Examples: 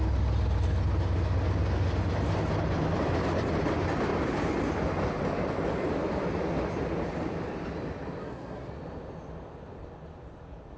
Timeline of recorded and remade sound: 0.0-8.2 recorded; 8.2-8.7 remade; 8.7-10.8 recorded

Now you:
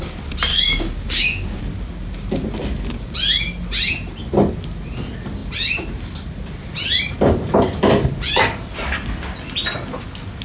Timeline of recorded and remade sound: 0.0-0.5 recorded; 0.5-1.6 remade; 1.6-10.4 recorded